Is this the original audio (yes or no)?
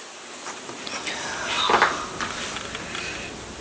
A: yes